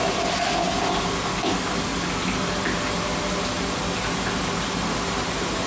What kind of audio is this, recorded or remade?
recorded